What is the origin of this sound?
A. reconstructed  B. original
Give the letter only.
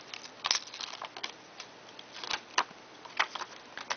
B